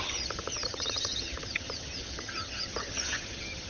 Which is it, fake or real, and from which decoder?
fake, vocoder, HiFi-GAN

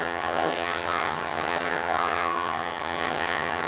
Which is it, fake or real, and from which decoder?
fake, vocoder, HiFi-GAN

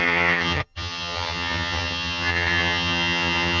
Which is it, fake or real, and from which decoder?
fake, vocoder, HiFi-GAN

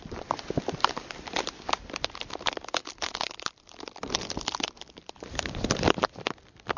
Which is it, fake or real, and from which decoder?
real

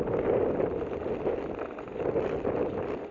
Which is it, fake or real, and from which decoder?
real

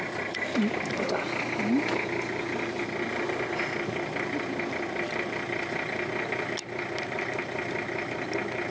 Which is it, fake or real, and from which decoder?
real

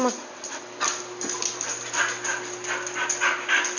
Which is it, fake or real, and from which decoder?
real